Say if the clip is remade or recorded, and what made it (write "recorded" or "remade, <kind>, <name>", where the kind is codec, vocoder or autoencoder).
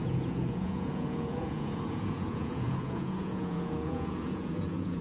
remade, vocoder, Vocos